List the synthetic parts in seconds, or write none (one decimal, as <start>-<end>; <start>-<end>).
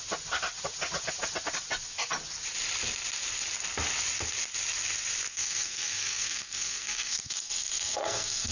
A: 5.3-8.5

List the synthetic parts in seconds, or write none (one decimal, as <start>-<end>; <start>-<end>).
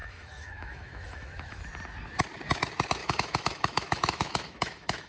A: 0.0-1.6; 3.0-5.1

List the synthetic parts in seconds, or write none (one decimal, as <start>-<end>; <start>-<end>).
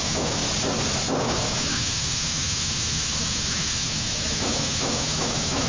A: 0.0-0.4; 1.2-5.7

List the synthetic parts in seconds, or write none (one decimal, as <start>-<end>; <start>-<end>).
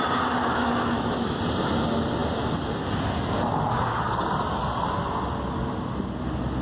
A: 0.4-1.4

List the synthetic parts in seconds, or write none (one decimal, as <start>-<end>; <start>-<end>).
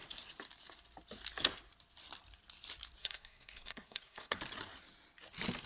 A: 3.0-4.4